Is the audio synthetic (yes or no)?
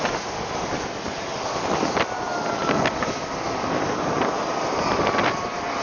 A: no